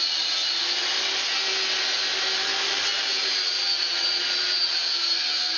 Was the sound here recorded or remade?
recorded